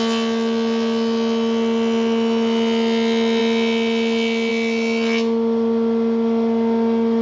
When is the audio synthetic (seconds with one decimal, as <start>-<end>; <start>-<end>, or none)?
none